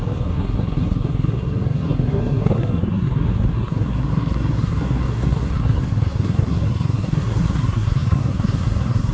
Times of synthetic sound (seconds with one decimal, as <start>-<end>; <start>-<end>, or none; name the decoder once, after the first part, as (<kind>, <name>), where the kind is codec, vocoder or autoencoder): 0.0-9.1 (codec, SNAC)